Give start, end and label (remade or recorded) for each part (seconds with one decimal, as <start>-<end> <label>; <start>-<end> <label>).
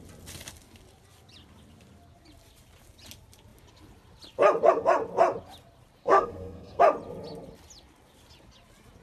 0.0-6.0 recorded; 6.0-6.8 remade; 6.8-9.0 recorded